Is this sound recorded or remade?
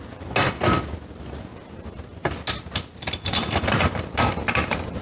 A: recorded